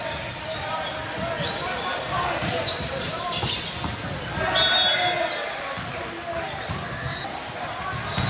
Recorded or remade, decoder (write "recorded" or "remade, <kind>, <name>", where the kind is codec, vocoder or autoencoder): recorded